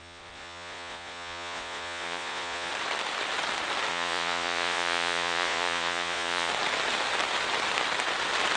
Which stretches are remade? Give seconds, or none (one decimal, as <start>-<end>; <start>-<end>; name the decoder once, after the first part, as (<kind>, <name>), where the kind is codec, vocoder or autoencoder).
0.0-2.7 (vocoder, Vocos); 3.9-6.5